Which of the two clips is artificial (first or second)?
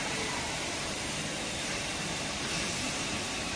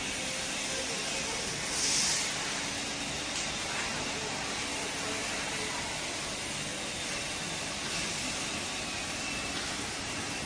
first